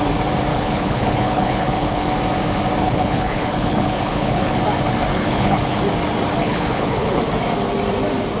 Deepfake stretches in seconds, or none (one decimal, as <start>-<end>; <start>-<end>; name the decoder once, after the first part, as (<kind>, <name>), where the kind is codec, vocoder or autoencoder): 0.5-2.1 (codec, HILCodec); 2.8-4.6; 5.1-5.8; 6.4-7.2